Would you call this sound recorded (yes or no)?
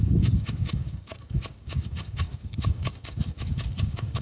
no